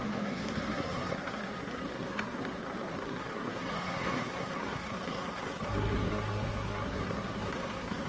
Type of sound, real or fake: fake